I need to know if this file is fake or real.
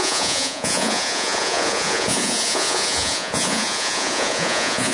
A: fake